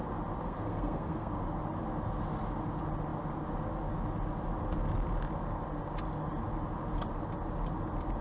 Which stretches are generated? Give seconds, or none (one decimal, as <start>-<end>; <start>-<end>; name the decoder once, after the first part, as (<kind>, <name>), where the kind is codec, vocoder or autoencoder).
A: 0.4-1.4 (codec, SNAC)